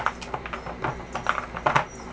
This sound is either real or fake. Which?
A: real